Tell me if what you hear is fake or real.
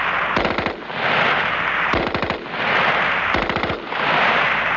real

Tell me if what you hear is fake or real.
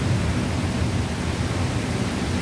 real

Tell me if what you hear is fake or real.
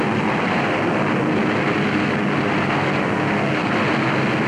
real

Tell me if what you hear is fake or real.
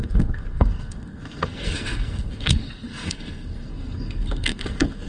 fake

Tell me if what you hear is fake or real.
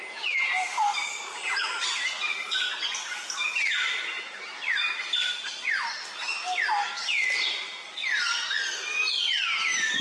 real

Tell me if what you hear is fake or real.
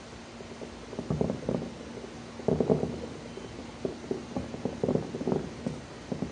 real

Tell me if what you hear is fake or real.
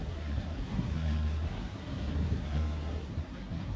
fake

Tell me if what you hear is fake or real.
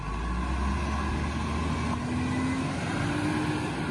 real